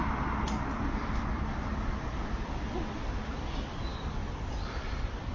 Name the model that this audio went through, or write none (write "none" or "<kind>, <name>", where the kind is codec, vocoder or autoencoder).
none